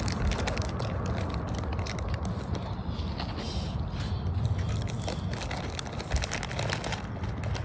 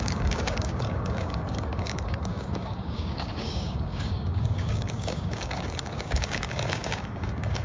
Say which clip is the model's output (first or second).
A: second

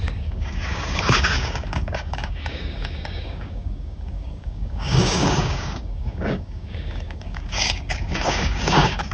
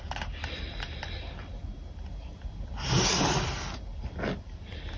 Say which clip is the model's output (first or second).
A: first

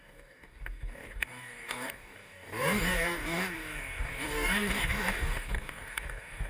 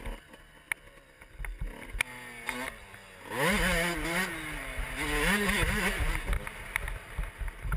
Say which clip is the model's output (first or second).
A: first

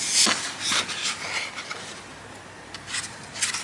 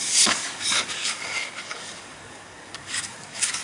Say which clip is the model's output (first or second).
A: second